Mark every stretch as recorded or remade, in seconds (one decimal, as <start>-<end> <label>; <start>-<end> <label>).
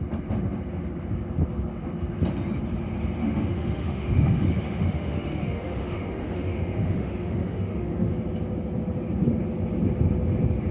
0.0-3.2 recorded; 3.2-8.1 remade; 8.1-10.7 recorded